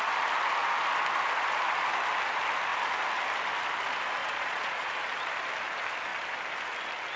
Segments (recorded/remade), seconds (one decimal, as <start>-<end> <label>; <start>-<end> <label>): 0.0-4.2 recorded; 4.2-4.9 remade; 4.9-7.2 recorded